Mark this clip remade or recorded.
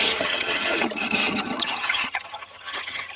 remade